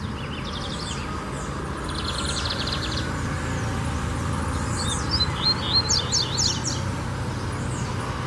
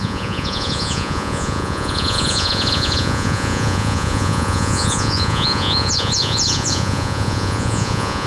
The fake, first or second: second